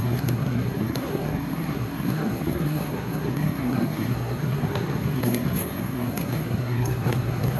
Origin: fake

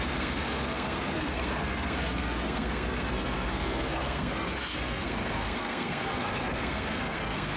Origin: fake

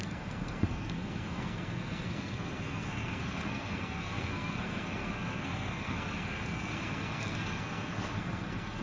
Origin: fake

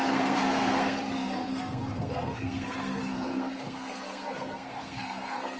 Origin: fake